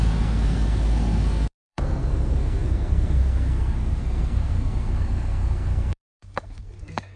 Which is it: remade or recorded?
remade